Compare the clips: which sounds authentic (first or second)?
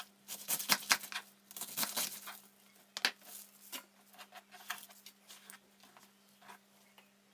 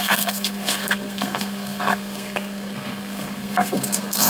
first